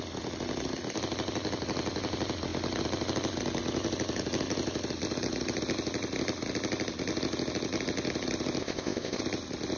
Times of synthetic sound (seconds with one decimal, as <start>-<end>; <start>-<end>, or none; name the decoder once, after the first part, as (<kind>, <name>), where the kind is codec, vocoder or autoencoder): 8.6-9.2 (codec, ZipCodec)